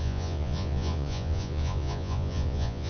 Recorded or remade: remade